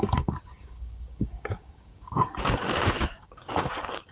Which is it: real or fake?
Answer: fake